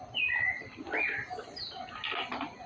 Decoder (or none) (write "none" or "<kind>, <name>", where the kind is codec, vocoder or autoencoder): none